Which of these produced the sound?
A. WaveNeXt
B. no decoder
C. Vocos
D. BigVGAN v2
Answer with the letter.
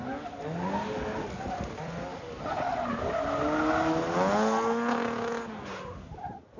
B